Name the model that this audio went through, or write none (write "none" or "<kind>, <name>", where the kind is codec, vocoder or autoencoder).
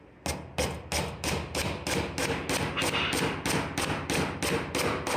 none